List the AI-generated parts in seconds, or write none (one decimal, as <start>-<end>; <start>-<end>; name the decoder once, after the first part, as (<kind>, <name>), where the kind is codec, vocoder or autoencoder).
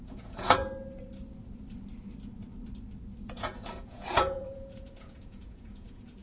0.0-0.6 (vocoder, Vocos); 3.2-6.2